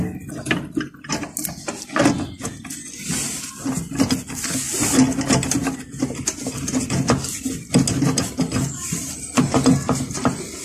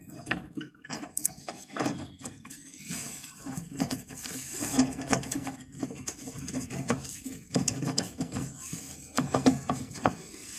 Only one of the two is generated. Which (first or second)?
second